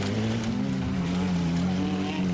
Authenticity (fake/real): real